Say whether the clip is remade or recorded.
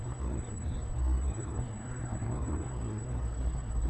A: remade